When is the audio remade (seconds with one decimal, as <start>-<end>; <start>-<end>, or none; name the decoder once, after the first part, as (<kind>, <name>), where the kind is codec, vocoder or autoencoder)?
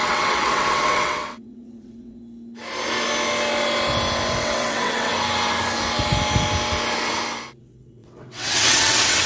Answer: 0.0-2.2 (vocoder, WaveNeXt); 4.4-5.1; 7.6-9.3